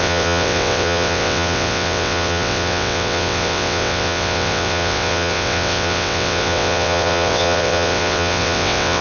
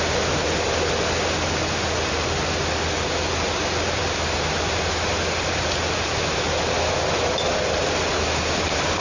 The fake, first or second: first